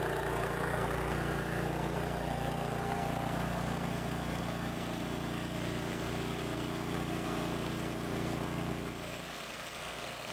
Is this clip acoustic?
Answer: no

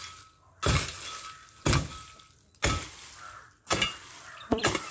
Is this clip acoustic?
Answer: yes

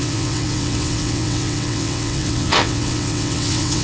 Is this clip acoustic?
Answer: no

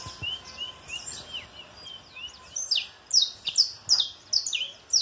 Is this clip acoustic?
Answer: yes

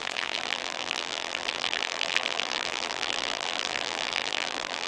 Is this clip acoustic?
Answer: no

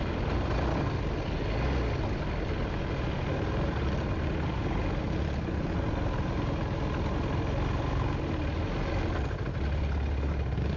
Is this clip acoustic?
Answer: yes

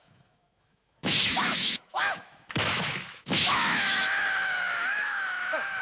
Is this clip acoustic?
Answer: no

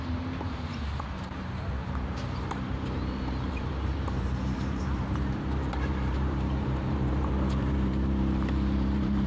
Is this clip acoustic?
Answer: no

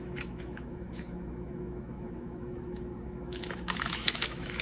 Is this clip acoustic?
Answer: no